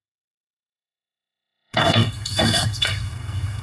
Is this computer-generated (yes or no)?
yes